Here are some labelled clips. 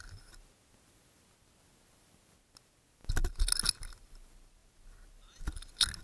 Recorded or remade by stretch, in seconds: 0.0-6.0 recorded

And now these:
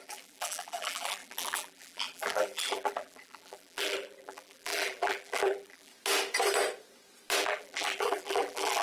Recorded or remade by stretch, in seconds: 0.0-5.9 remade; 5.9-7.4 recorded; 7.4-8.8 remade